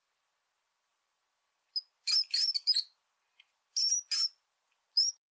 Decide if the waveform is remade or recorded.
recorded